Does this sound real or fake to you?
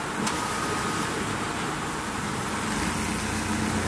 real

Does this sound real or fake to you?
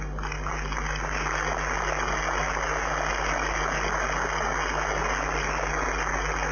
real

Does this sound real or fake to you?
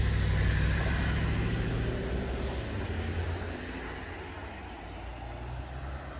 real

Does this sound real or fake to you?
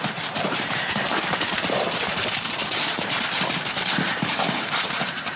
fake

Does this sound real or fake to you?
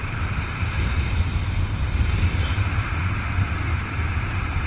fake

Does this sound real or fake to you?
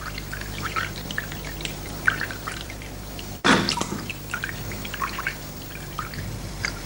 fake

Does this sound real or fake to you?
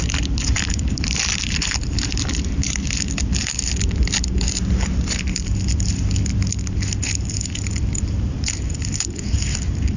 fake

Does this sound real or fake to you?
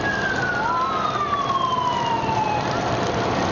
real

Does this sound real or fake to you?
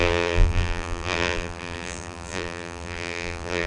fake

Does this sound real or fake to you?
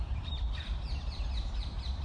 fake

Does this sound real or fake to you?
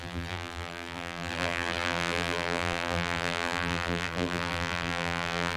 fake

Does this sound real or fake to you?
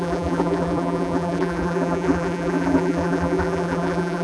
fake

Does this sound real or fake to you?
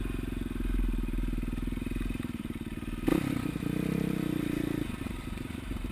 fake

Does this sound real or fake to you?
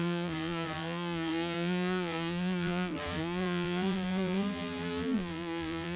fake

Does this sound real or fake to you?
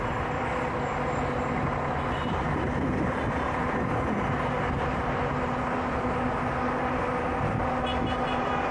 real